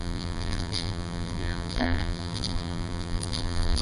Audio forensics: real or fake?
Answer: fake